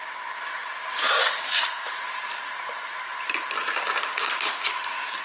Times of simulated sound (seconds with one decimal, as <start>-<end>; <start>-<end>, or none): 1.2-1.9; 3.8-4.3